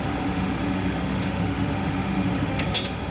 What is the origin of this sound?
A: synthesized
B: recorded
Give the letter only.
A